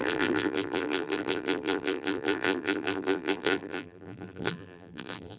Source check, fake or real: fake